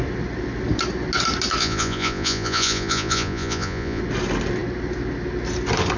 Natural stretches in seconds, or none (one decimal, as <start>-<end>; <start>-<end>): 0.0-1.6; 4.0-6.0